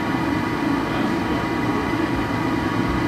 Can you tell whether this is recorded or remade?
remade